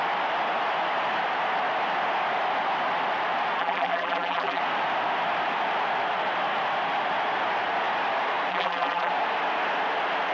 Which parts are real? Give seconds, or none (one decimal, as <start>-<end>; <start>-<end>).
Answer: 0.0-3.6; 4.6-8.5; 9.1-10.3